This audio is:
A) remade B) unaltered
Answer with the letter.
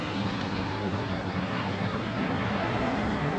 A